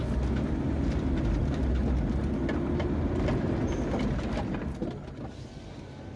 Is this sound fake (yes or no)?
no